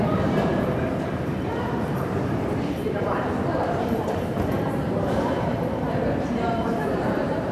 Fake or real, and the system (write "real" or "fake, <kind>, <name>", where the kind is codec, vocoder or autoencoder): fake, vocoder, BigVGAN v2